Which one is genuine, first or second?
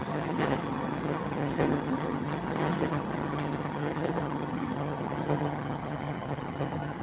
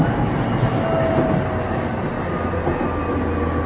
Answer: second